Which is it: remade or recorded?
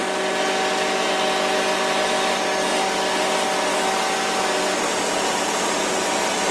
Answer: recorded